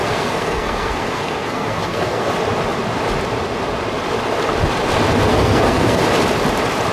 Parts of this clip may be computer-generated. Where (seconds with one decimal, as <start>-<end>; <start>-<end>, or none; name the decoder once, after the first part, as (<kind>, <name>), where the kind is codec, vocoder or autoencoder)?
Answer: 0.0-2.3 (codec, SNAC); 5.3-6.0